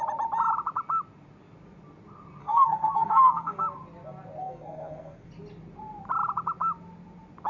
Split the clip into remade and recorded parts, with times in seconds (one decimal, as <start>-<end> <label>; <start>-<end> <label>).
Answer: 0.0-2.4 recorded; 2.4-3.6 remade; 3.6-4.4 recorded; 4.4-5.3 remade; 5.3-7.5 recorded